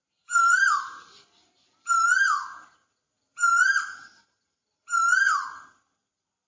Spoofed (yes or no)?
yes